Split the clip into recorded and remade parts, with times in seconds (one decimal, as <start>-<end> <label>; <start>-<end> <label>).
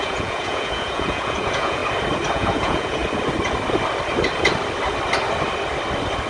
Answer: 0.0-1.8 remade; 1.8-2.3 recorded; 2.3-3.0 remade; 3.0-6.3 recorded